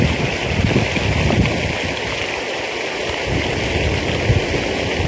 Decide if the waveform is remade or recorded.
recorded